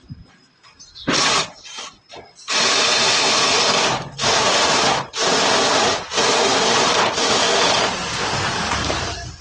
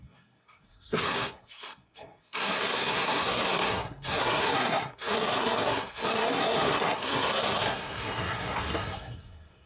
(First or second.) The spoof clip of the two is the second